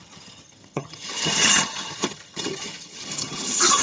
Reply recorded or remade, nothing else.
remade